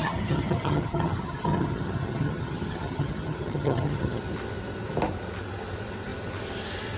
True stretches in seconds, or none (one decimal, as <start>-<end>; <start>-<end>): 4.2-7.0